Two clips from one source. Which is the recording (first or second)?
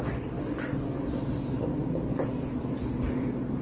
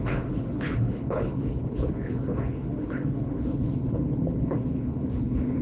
first